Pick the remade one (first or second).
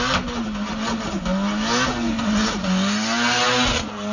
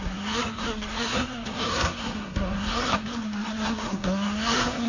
second